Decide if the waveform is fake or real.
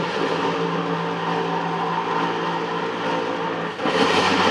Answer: real